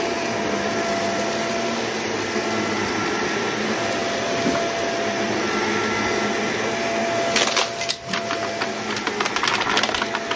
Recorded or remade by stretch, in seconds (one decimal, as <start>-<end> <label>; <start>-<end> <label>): 0.0-10.4 recorded